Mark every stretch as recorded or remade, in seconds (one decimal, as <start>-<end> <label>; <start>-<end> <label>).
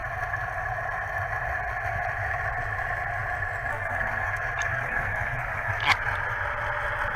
0.0-3.7 recorded; 3.7-4.3 remade; 4.3-4.7 recorded; 4.7-5.7 remade; 5.7-7.2 recorded